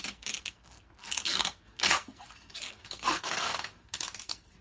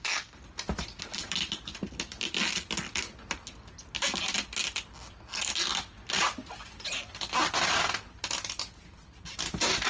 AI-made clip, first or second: first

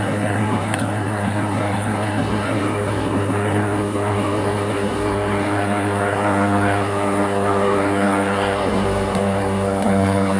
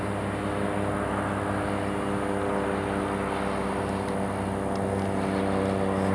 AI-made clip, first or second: first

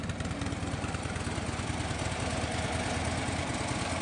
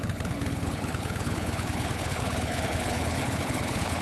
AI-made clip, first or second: second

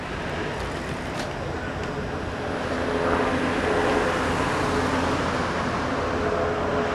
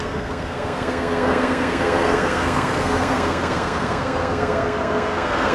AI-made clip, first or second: second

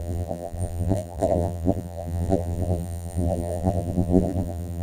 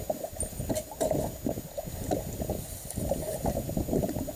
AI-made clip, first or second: first